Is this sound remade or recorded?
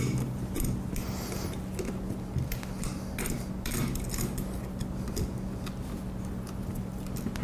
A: recorded